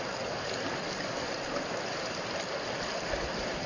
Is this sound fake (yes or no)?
no